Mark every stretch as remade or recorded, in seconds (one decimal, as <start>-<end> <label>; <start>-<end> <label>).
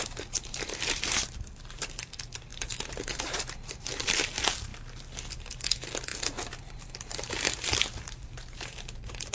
0.0-4.7 remade; 4.7-5.3 recorded; 5.3-9.3 remade